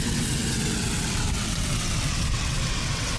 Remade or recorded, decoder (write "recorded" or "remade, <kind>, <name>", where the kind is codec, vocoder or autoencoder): remade, vocoder, WaveNeXt